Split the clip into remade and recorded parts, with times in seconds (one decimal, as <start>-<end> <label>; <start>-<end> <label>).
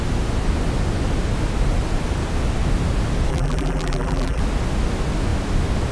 0.0-3.3 recorded; 3.3-4.4 remade; 4.4-5.9 recorded